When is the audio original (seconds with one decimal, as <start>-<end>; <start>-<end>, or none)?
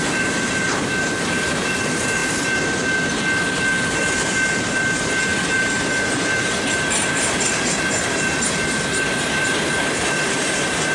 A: 2.2-3.9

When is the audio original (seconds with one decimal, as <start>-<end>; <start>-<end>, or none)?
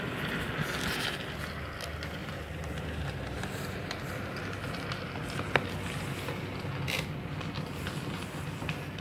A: 0.0-2.2; 4.1-9.0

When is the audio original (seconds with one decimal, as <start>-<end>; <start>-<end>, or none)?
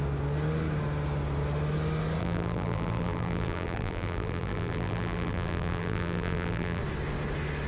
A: 0.0-2.2; 6.8-7.7